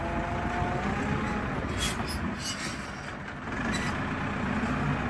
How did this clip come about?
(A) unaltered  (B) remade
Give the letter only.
A